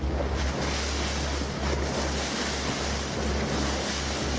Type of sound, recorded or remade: recorded